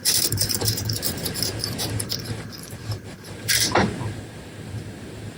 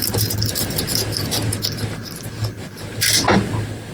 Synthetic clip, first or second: first